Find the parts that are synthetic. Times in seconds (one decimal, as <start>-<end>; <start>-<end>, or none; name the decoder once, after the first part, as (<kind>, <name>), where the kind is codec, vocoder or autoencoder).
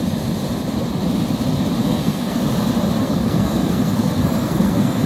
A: 1.8-2.4 (codec, SNAC); 3.0-5.1